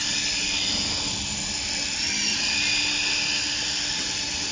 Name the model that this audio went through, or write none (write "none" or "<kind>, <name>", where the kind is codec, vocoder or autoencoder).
none